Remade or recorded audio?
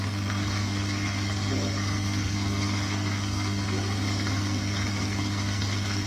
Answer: remade